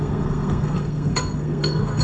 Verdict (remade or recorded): remade